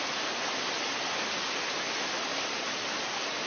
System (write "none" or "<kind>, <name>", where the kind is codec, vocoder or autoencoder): none